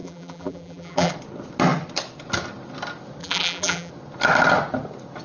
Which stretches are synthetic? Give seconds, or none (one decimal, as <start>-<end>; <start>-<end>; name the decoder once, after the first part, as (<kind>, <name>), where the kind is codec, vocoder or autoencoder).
0.0-1.1 (vocoder, BigVGAN v2); 3.2-3.9